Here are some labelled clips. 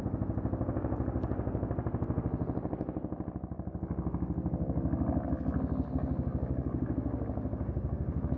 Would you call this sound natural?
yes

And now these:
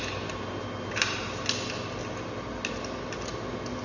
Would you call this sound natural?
yes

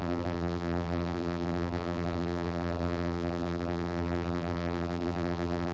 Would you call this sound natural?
no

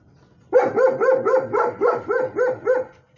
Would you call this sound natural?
yes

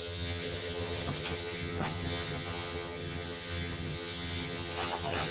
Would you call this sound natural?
no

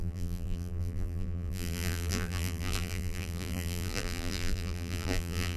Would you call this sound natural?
no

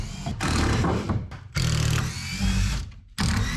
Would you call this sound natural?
yes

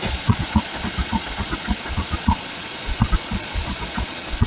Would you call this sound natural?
no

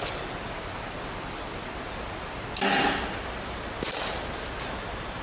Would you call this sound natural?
yes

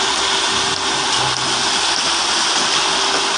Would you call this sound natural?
yes